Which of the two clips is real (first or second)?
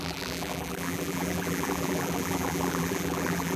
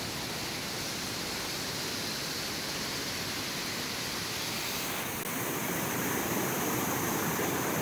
second